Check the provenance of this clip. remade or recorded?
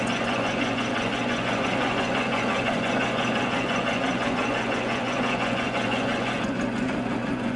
remade